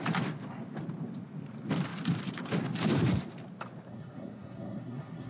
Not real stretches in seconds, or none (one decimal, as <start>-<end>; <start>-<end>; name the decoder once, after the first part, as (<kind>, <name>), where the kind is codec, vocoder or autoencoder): 3.9-5.3 (codec, SNAC)